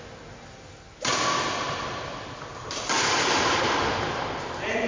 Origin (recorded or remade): recorded